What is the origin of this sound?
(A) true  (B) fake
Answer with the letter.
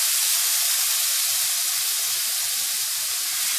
A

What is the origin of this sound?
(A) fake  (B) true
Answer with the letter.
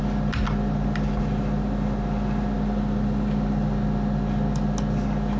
B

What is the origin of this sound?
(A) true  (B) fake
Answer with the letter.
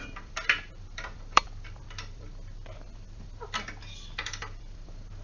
B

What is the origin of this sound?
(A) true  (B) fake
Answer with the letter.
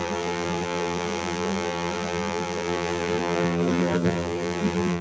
B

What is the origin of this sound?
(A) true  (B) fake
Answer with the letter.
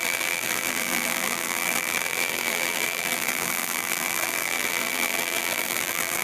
B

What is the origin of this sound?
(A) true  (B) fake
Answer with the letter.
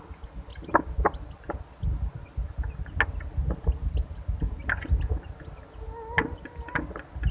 A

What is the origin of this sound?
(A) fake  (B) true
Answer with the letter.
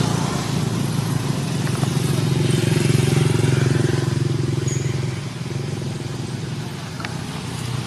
B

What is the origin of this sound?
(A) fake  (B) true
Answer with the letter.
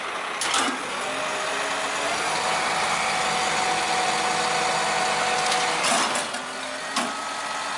B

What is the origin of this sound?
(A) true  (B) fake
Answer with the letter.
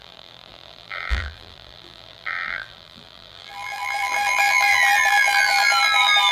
B